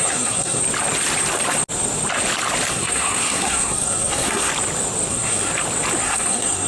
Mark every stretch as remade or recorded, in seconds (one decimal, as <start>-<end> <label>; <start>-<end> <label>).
0.0-0.6 remade; 0.6-2.7 recorded; 2.7-4.5 remade; 4.5-5.1 recorded; 5.1-5.5 remade; 5.5-6.0 recorded; 6.0-6.7 remade